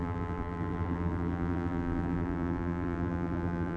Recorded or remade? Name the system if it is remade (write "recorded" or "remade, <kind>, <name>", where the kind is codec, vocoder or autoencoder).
remade, vocoder, BigVGAN v2